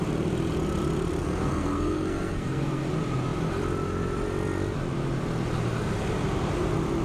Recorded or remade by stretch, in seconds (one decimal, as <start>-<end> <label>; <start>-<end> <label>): 0.0-1.2 recorded; 1.2-2.8 remade; 2.8-7.0 recorded